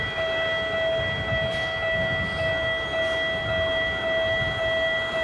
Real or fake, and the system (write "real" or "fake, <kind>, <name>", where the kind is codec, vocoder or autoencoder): real